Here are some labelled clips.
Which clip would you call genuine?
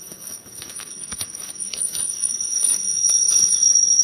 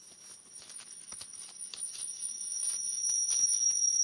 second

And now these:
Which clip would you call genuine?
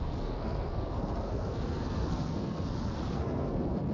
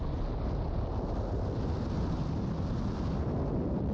second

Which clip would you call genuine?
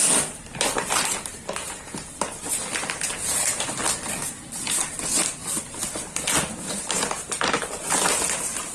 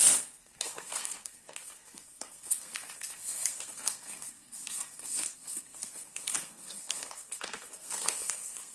first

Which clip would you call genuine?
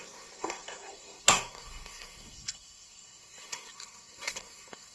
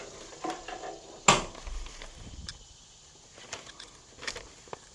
second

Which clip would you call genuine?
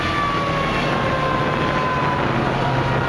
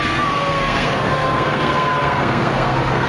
first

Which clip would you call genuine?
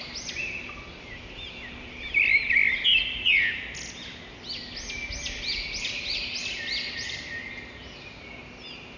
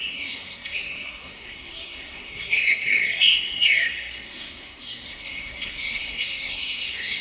first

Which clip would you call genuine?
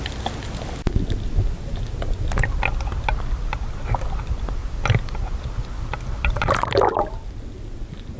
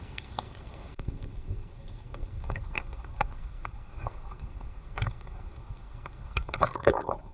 first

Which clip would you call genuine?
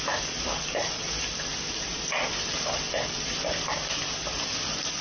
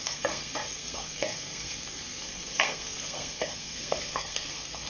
first